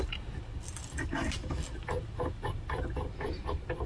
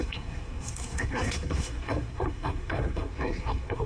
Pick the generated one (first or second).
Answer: second